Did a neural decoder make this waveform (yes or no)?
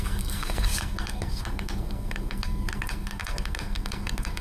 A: yes